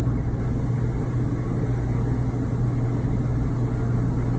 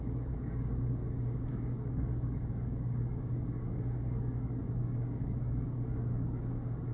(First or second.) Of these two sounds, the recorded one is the first